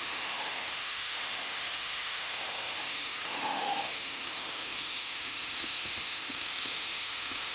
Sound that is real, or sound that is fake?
fake